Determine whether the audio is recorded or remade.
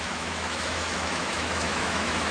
remade